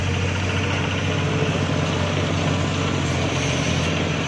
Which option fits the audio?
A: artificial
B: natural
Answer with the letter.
B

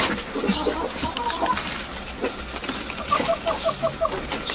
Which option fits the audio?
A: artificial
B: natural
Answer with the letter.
B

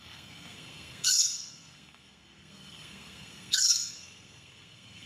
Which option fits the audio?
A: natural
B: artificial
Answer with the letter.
B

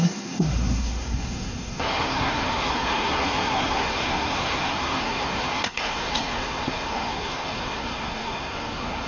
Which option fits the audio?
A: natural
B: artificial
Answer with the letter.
B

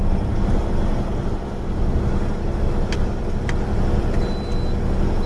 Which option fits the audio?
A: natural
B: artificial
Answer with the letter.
A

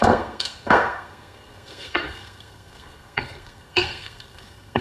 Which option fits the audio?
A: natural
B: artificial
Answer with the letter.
B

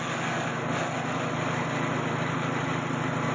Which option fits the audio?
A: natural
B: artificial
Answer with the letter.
A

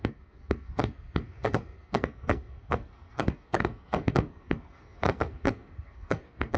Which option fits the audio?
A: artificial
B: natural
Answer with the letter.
A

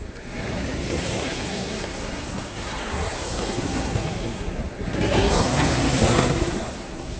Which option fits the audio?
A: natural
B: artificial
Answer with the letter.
B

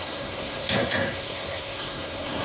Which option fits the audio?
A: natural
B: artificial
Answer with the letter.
B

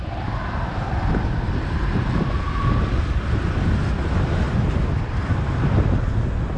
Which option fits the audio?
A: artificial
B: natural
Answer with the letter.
B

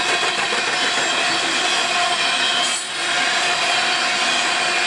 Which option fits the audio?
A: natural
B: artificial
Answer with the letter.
A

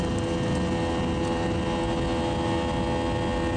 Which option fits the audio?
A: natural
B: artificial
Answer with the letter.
A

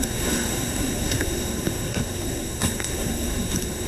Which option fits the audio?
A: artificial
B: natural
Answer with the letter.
A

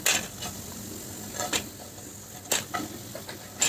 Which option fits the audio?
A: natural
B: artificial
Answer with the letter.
A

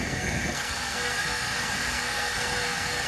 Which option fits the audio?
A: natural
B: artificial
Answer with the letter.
B